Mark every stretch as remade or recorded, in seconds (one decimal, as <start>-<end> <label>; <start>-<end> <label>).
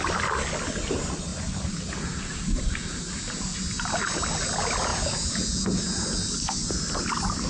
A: 0.0-4.9 recorded; 4.9-5.8 remade; 5.8-7.5 recorded